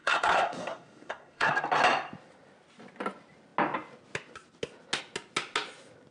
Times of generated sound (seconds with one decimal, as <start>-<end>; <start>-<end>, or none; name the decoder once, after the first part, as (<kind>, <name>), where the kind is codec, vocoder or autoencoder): 0.0-1.5 (codec, SNAC)